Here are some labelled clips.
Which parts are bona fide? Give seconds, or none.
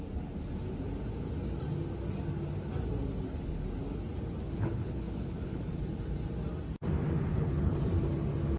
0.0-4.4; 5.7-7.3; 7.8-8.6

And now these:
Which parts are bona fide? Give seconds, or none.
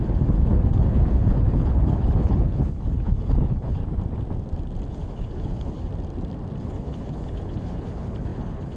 3.8-4.9; 5.9-6.6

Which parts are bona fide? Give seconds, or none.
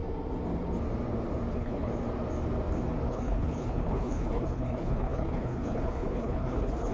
0.0-1.5; 1.9-3.1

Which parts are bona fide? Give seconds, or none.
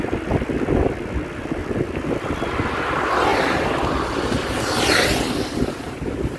0.0-1.6; 2.4-3.3; 5.9-6.4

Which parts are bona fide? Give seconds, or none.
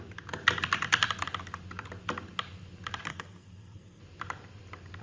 0.0-3.1; 4.0-5.0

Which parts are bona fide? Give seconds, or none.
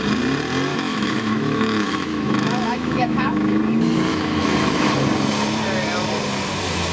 0.0-0.7; 3.6-4.1; 4.9-6.9